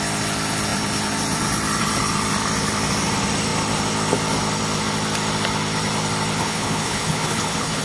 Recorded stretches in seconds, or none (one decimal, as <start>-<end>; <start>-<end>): 0.0-6.4